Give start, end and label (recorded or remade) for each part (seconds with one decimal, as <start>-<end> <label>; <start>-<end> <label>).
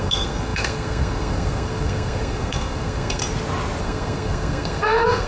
0.0-3.2 remade; 3.2-3.8 recorded; 3.8-5.3 remade